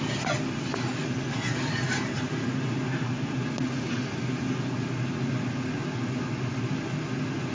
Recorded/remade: recorded